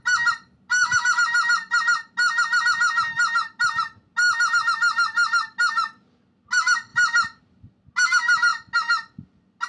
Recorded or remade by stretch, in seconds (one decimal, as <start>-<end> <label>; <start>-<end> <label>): 0.0-9.7 recorded